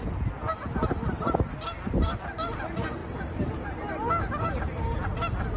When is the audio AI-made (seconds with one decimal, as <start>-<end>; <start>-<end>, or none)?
none